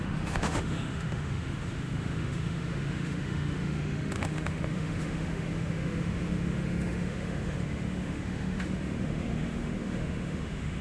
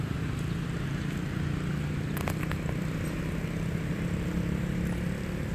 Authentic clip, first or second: second